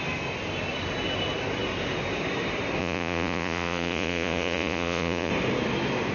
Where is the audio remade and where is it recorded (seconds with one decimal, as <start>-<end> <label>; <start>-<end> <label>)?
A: 0.0-2.8 recorded; 2.8-5.3 remade; 5.3-6.1 recorded